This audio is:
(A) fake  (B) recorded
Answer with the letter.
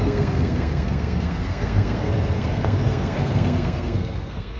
A